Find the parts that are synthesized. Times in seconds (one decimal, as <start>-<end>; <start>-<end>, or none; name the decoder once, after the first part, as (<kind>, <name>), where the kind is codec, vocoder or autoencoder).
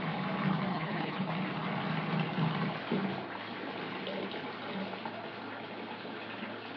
0.7-1.3 (codec, HILCodec)